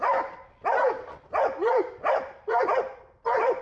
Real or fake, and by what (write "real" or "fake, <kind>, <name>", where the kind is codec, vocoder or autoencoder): fake, vocoder, BigVGAN v2